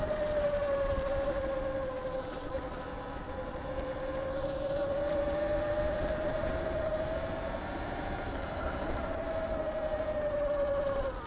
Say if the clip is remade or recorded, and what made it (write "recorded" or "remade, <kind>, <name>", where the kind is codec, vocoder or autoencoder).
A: recorded